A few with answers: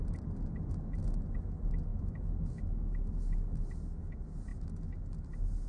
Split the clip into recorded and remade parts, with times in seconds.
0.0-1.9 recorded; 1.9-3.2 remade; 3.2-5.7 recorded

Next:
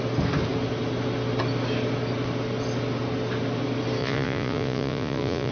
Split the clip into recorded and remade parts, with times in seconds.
0.0-4.0 recorded; 4.0-5.5 remade

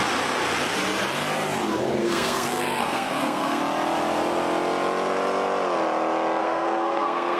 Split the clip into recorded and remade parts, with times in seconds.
0.0-2.0 recorded; 2.0-3.6 remade; 3.6-6.4 recorded; 6.4-7.4 remade

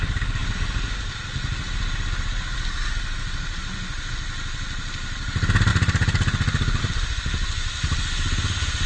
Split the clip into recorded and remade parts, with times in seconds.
0.0-8.9 recorded